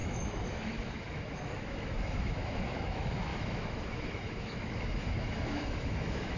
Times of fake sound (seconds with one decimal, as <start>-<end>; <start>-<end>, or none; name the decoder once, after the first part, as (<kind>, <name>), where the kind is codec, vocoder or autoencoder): 0.0-6.4 (autoencoder, DAC-VAE)